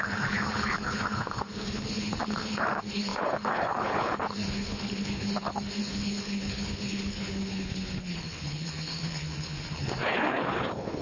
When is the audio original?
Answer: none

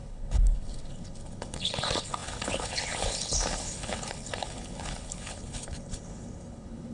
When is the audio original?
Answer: none

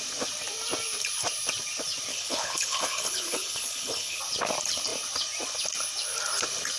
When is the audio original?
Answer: 0.0-2.1; 4.2-6.8

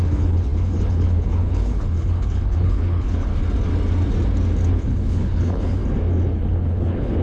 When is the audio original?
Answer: 3.3-4.7; 5.8-6.3

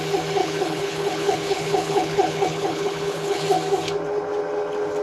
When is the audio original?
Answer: 0.0-0.4; 3.4-5.0

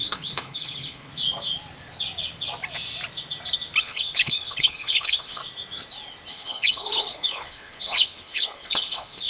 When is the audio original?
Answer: 1.1-3.8; 5.4-6.3

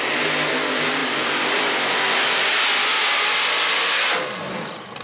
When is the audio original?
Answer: 0.0-5.0

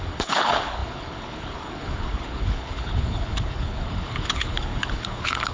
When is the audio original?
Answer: none